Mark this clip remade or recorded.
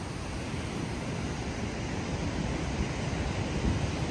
recorded